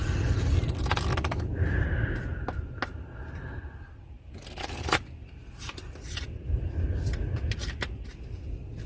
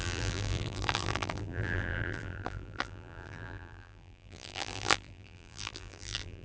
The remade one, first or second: second